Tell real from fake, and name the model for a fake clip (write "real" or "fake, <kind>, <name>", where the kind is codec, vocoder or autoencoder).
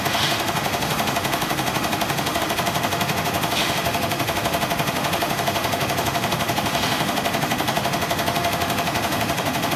fake, autoencoder, DAC-VAE